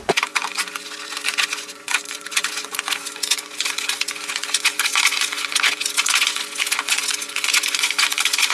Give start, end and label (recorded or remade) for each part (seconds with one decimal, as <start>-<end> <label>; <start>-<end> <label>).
0.0-8.5 remade